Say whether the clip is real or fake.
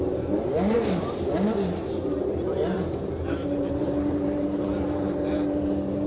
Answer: fake